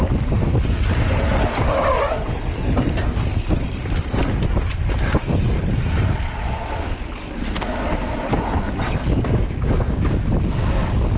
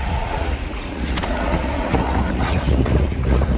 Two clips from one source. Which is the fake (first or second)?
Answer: second